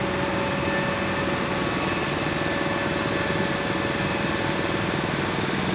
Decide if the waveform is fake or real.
real